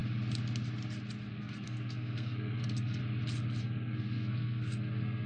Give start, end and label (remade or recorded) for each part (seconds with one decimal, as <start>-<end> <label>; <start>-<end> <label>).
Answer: 0.0-1.3 recorded; 1.3-3.0 remade; 3.0-3.6 recorded; 3.6-5.3 remade